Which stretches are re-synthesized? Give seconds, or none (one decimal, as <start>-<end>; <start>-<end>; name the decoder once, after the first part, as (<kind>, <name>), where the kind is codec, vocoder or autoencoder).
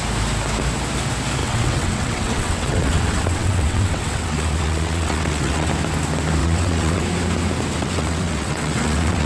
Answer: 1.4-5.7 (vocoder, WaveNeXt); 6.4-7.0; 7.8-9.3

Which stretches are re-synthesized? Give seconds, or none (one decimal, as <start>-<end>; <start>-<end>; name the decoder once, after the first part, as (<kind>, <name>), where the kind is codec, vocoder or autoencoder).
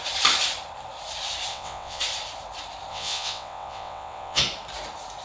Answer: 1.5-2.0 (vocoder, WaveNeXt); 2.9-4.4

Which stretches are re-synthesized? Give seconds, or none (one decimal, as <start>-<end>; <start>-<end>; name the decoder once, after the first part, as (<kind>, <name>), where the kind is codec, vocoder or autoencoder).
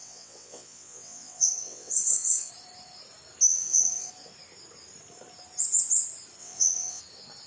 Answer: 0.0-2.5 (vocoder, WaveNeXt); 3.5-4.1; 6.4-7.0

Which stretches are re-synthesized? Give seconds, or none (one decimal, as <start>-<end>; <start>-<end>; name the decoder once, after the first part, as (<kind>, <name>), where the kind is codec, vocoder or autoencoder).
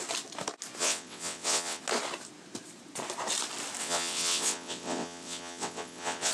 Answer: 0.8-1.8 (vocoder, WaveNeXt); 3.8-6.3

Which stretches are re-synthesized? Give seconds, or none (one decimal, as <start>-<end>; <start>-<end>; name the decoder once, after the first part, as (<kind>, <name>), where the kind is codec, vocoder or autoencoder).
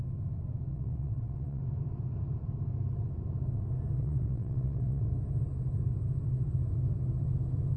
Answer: 0.7-1.6 (vocoder, WaveNeXt); 4.0-5.1